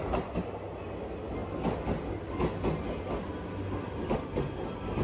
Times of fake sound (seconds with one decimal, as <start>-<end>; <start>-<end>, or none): none